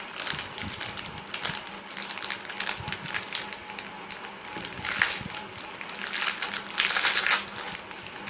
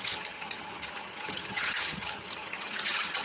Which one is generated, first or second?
second